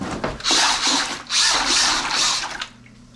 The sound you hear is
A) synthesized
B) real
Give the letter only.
B